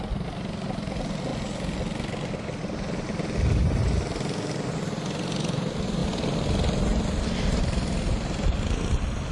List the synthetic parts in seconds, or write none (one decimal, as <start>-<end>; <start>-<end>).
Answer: none